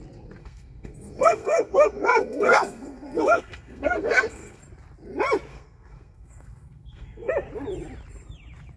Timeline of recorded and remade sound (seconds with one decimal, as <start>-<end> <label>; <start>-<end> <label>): 0.0-0.4 recorded; 0.4-4.6 remade; 4.6-5.5 recorded; 5.5-7.3 remade; 7.3-8.8 recorded